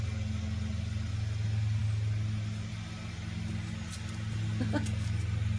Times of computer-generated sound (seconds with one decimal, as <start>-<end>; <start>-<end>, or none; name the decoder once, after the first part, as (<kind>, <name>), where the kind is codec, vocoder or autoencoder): none